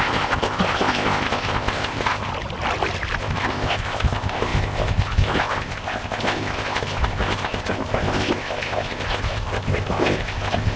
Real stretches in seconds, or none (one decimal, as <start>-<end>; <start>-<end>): 2.3-3.2